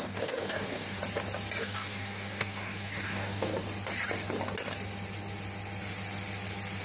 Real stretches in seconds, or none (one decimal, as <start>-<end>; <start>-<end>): 1.0-1.6; 3.5-6.8